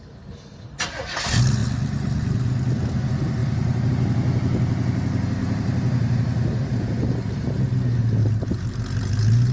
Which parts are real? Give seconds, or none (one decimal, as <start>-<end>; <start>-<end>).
0.0-5.4; 6.2-8.2; 8.8-9.5